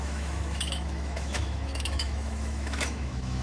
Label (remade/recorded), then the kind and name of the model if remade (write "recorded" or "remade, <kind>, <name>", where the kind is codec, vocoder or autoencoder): remade, autoencoder, DAC-VAE